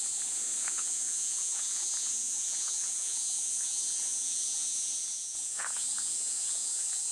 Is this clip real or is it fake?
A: fake